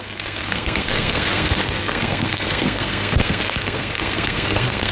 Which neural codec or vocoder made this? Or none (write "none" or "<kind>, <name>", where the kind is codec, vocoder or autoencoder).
codec, SNAC